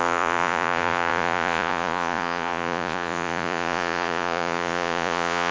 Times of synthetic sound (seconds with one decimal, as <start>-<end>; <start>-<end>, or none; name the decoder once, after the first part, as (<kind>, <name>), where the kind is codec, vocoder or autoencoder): 0.0-5.5 (vocoder, Vocos)